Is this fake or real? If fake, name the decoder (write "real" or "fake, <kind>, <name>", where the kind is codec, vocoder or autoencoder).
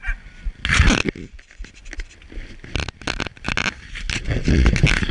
real